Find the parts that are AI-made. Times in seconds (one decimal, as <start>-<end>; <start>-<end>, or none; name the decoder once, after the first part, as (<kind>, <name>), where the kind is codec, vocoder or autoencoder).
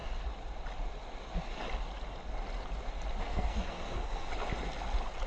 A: 3.2-4.3 (codec, SNAC)